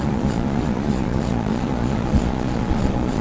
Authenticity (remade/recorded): remade